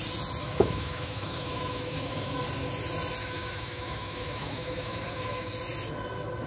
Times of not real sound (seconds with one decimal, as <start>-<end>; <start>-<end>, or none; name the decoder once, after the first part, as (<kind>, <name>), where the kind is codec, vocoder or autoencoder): 0.4-2.4 (autoencoder, DAC-VAE); 3.2-5.5